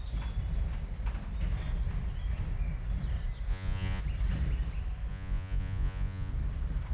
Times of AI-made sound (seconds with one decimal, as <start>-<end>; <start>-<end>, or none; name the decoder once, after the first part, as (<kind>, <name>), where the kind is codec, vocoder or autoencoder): 3.5-4.0 (vocoder, Vocos); 5.1-6.3